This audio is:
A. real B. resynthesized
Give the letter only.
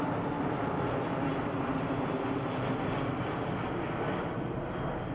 A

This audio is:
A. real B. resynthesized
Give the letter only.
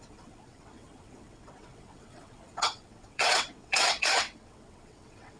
B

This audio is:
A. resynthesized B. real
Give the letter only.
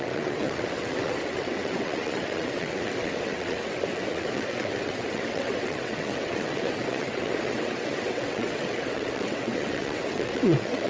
A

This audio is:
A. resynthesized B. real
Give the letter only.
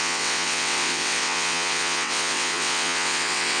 A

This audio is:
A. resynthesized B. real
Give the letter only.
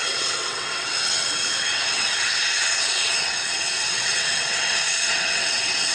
A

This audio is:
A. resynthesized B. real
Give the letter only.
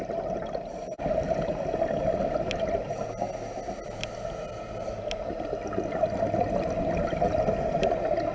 B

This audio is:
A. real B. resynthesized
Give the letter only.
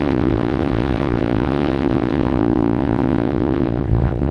B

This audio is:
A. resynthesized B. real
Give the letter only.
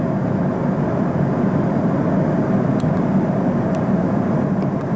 B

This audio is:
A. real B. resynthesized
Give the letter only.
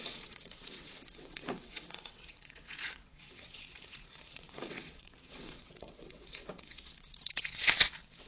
B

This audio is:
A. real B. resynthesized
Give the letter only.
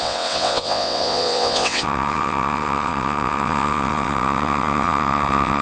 B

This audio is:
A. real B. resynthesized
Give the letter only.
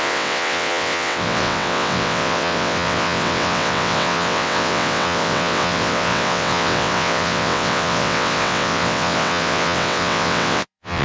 B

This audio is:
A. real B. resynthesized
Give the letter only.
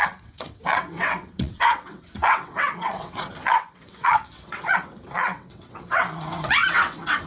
B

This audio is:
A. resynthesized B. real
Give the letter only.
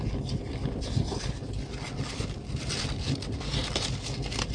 B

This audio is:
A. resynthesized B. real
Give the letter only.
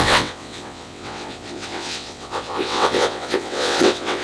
A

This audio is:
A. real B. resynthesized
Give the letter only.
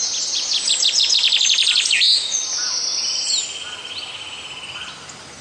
A